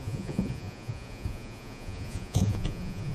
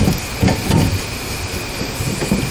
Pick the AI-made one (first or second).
first